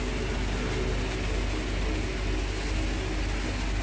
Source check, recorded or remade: recorded